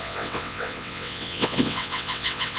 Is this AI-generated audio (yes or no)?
yes